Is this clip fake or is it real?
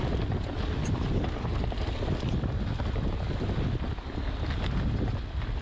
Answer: real